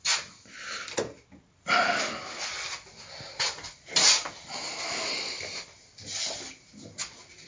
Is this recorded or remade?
recorded